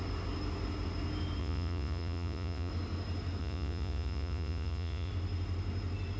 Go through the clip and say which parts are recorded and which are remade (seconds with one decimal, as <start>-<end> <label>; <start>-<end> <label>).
0.0-1.4 recorded; 1.4-2.7 remade; 2.7-3.4 recorded; 3.4-5.1 remade; 5.1-6.2 recorded